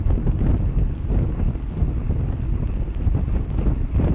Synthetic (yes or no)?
no